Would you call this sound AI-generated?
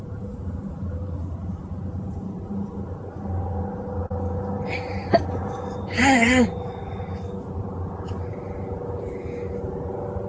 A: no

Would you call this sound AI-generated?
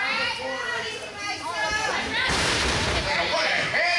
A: yes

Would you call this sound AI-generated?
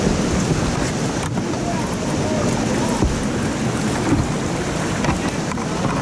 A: no